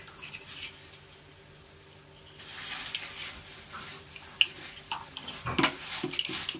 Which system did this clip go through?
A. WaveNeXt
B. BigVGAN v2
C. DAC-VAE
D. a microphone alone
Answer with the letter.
D